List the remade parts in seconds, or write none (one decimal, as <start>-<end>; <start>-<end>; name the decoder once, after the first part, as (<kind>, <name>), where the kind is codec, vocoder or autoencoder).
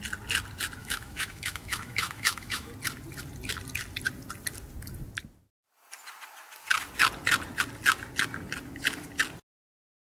0.8-2.7 (autoencoder, DAC-VAE)